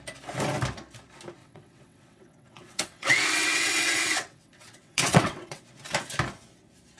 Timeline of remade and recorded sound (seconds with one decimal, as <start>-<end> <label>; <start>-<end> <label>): 0.0-1.4 recorded; 1.4-5.6 remade; 5.6-7.0 recorded